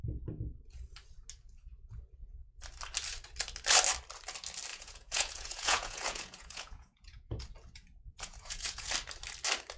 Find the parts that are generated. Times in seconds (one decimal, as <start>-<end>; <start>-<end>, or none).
4.7-7.4; 8.1-8.9